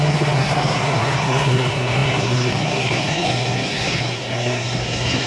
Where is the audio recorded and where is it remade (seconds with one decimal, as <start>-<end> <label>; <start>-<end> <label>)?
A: 0.0-5.3 remade